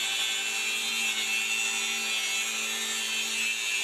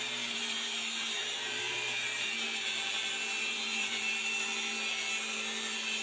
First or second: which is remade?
second